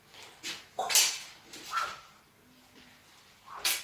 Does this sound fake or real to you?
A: real